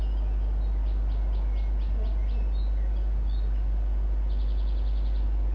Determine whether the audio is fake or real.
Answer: real